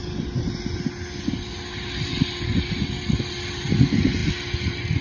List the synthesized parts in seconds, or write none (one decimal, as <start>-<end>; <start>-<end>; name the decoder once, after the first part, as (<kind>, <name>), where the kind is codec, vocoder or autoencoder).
none